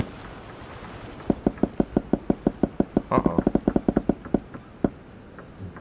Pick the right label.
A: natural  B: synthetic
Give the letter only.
A